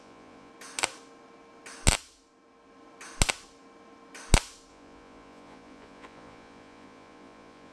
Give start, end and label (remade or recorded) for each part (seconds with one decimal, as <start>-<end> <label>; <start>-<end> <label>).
0.0-0.5 remade; 0.5-4.7 recorded; 4.7-7.7 remade